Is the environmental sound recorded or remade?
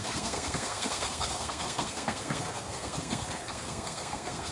remade